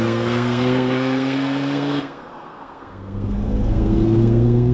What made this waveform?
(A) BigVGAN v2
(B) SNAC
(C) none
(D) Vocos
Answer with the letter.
B